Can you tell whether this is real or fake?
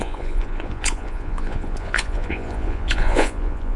fake